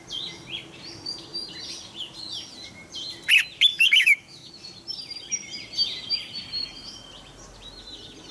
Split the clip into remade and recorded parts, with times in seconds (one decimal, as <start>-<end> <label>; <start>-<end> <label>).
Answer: 0.0-3.7 recorded; 3.7-4.5 remade; 4.5-8.3 recorded